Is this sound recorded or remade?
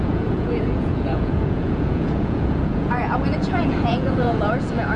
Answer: remade